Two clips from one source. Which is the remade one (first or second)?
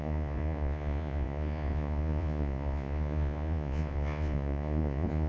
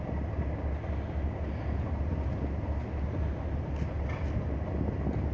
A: first